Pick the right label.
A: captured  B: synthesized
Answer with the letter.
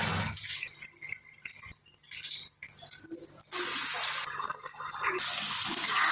A